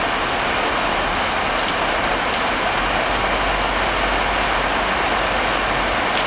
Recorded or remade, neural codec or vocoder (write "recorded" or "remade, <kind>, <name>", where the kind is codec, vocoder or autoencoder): recorded